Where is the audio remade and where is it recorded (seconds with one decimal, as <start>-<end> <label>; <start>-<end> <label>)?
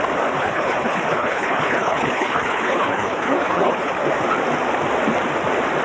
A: 0.0-0.4 recorded; 0.4-3.9 remade; 3.9-5.8 recorded